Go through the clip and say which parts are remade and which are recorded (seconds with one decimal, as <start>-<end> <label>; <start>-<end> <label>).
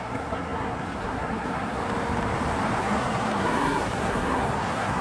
0.0-1.8 remade; 1.8-2.8 recorded; 2.8-5.0 remade